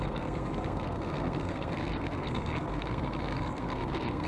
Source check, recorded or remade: remade